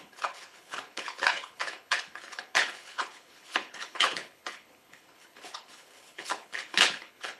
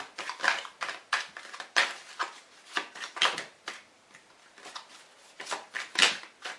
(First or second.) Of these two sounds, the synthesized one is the first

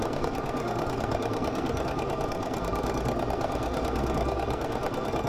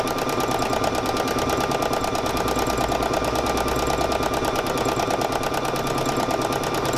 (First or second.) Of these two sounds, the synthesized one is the first